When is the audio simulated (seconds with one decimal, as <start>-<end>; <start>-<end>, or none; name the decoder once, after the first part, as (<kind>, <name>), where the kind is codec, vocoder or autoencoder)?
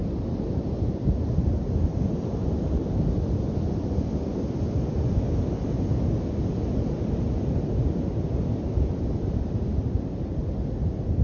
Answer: none